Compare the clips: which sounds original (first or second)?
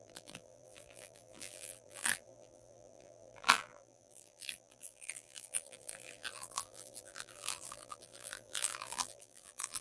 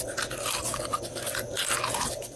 second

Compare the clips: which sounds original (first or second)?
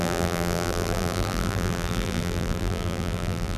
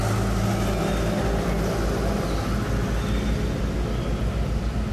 second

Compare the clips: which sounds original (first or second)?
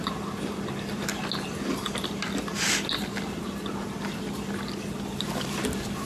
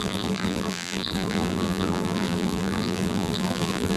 first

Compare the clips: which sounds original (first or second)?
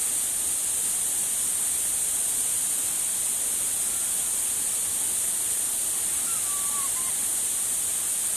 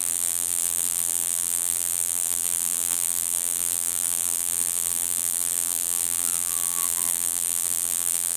first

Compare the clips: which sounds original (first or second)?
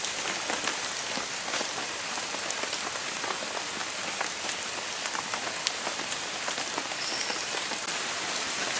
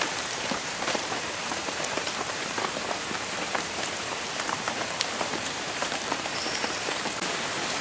first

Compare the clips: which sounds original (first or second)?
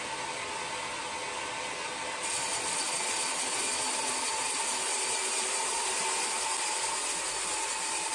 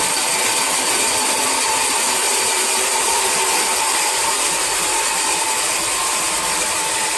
first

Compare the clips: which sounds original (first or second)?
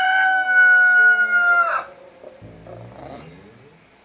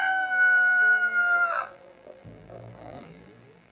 first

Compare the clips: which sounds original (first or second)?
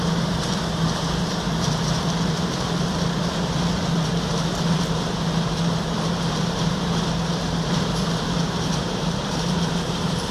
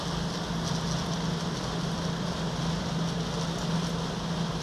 second